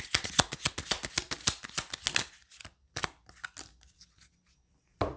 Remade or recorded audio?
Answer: recorded